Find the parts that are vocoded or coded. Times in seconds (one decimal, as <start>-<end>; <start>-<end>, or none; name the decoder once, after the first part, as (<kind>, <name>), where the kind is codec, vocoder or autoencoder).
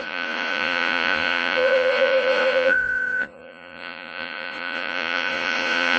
0.0-6.0 (vocoder, Vocos)